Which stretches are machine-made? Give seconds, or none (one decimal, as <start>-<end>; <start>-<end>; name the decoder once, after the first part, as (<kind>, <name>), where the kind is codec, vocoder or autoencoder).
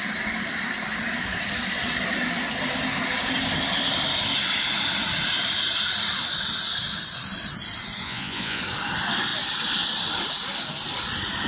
8.0-8.6 (vocoder, Vocos)